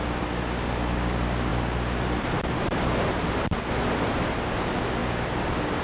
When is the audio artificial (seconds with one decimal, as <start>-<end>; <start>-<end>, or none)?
none